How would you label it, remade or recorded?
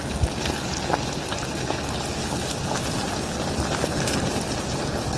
recorded